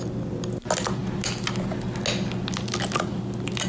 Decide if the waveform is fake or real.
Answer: real